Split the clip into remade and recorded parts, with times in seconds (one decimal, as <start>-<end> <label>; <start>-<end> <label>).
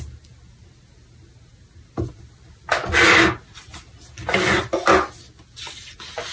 0.0-6.3 recorded